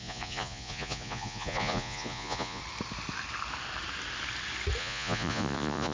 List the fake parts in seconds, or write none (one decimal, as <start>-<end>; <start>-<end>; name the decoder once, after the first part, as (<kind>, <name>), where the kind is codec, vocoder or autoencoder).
0.0-2.6 (vocoder, Vocos); 4.8-5.9